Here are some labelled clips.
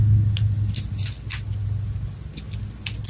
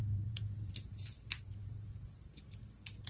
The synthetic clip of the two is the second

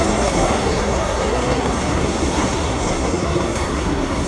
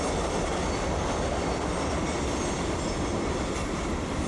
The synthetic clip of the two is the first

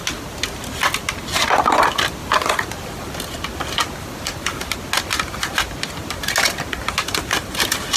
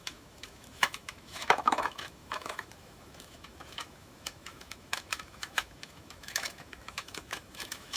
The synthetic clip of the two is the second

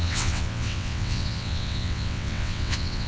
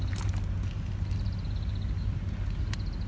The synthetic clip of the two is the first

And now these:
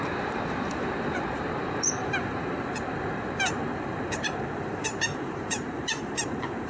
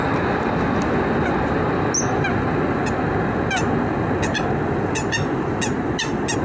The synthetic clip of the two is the first